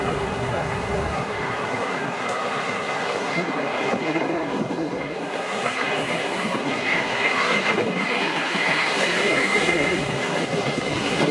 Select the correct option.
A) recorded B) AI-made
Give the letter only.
B